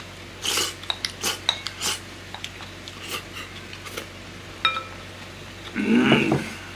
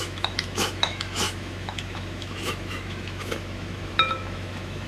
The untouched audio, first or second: first